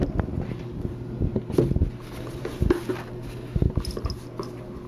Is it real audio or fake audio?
real